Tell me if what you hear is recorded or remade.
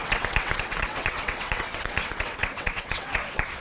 remade